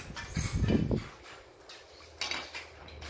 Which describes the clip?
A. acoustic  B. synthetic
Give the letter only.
A